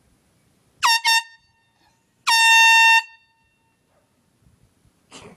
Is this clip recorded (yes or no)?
yes